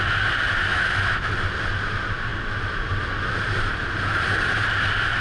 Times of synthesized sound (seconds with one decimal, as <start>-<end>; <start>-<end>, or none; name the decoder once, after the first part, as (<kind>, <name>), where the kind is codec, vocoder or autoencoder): 0.7-1.3 (autoencoder, DAC-VAE)